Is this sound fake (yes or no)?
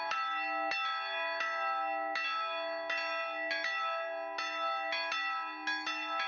no